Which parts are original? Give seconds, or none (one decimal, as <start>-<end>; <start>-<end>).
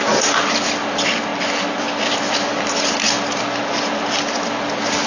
0.0-5.1